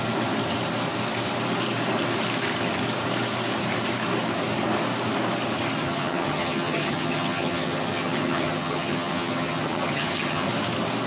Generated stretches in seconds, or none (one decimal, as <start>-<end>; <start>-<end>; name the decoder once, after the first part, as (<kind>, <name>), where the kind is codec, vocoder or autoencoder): 5.8-10.5 (vocoder, HiFi-GAN)